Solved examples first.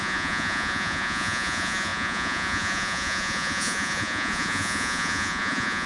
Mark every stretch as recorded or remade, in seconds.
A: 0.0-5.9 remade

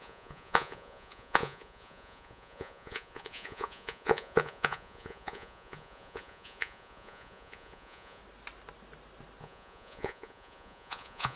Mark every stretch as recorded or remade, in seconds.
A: 0.0-8.2 remade; 8.2-9.4 recorded; 9.4-11.4 remade

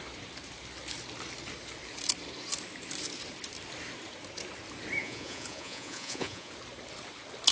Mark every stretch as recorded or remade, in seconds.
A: 0.0-5.0 recorded; 5.0-6.5 remade; 6.5-7.5 recorded

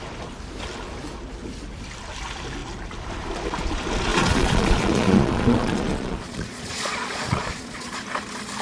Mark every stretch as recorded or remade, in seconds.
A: 0.0-4.1 recorded; 4.1-8.0 remade; 8.0-8.6 recorded

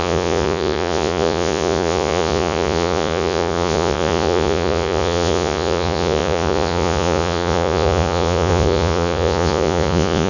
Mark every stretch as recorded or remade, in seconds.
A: 0.0-10.3 remade